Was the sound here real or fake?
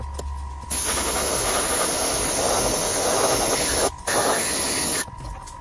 real